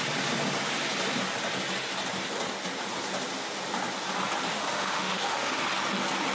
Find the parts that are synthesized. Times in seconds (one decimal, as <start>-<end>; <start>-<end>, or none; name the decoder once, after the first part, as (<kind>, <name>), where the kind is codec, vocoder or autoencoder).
4.5-5.6 (autoencoder, DAC-VAE)

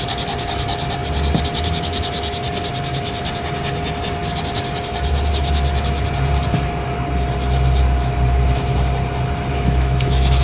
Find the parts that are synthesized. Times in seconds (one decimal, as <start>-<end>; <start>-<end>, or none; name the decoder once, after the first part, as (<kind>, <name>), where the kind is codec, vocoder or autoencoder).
9.5-10.4 (autoencoder, DAC-VAE)

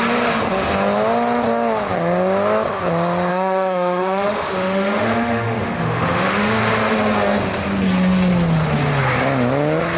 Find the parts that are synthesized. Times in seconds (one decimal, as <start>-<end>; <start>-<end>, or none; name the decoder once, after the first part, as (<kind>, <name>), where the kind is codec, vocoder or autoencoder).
3.3-6.6 (autoencoder, DAC-VAE)

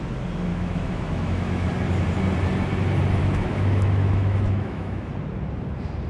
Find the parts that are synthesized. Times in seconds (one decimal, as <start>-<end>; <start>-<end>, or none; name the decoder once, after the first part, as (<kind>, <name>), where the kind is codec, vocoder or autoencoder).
0.5-1.7 (autoencoder, DAC-VAE); 3.2-5.1

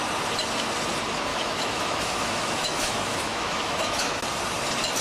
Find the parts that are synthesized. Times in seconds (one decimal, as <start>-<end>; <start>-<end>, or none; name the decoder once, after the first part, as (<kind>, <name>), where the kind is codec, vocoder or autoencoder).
1.3-4.2 (autoencoder, DAC-VAE)

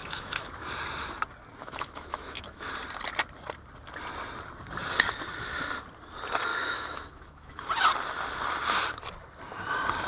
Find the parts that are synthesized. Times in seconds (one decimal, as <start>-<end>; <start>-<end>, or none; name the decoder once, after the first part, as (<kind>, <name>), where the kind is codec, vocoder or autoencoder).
0.0-0.5 (autoencoder, DAC-VAE); 1.6-2.7; 6.5-7.7

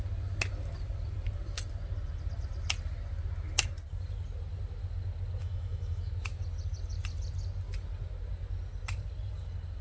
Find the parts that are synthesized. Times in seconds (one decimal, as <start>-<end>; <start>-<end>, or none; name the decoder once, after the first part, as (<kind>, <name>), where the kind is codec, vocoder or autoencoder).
5.4-6.1 (autoencoder, DAC-VAE)

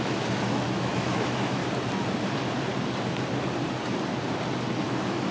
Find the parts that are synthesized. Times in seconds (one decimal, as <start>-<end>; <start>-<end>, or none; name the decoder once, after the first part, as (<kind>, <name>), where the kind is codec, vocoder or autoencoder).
0.0-1.6 (autoencoder, DAC-VAE); 4.8-5.3